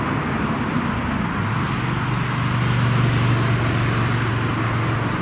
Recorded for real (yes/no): yes